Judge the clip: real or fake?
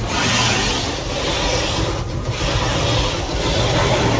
real